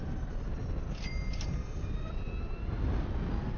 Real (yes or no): yes